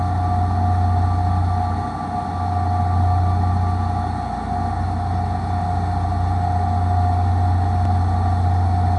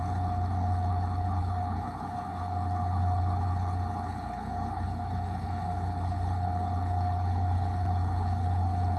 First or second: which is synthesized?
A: second